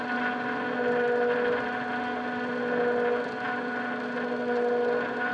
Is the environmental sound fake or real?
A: real